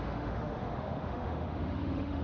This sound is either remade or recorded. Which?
remade